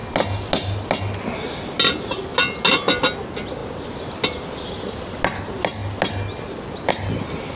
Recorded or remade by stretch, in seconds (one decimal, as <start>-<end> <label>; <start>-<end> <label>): 0.0-7.6 recorded